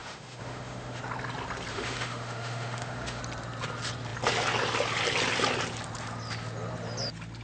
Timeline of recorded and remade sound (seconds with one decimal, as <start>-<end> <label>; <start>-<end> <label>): 0.0-1.0 remade; 1.0-1.7 recorded; 1.7-3.2 remade; 3.2-7.4 recorded